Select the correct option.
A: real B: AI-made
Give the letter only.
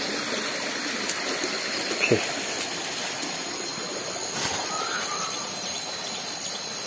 A